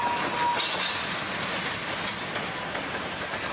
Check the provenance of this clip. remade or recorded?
recorded